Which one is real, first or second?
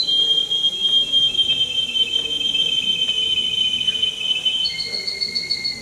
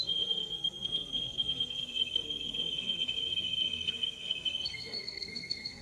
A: first